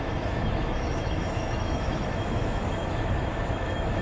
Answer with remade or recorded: remade